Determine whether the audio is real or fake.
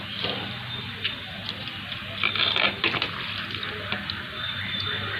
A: real